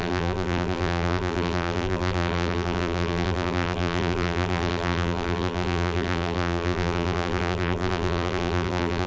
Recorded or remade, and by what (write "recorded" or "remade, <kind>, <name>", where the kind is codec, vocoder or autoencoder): remade, vocoder, BigVGAN v2